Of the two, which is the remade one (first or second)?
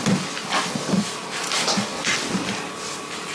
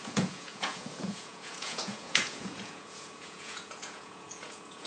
second